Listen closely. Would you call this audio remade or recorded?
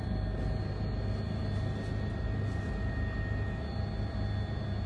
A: recorded